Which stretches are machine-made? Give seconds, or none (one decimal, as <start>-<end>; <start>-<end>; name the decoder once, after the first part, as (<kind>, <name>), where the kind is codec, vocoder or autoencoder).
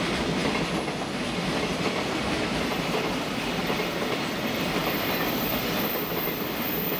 none